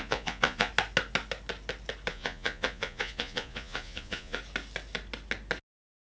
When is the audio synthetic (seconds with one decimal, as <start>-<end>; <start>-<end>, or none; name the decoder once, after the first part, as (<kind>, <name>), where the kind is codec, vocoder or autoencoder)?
0.0-0.7 (vocoder, Vocos); 2.1-4.4